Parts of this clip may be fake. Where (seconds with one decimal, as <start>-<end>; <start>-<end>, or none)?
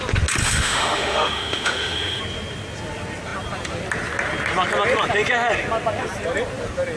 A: 0.4-2.2